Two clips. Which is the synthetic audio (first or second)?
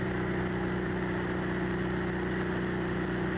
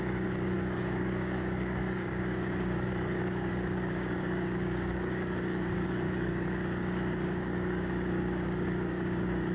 second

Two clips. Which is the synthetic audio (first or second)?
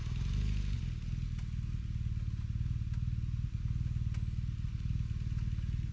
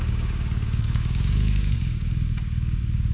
second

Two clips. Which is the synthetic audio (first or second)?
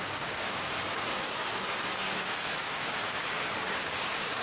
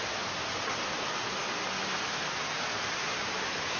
first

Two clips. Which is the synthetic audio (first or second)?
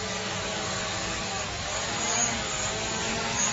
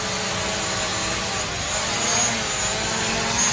first